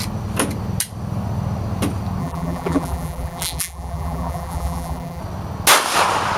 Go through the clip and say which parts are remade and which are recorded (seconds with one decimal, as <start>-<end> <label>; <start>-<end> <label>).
0.0-2.2 recorded; 2.2-5.2 remade; 5.2-6.4 recorded